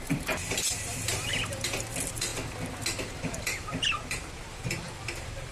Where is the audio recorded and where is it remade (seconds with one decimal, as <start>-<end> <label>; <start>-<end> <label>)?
0.0-2.3 remade; 2.3-3.2 recorded; 3.2-5.5 remade